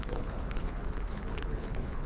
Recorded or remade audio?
remade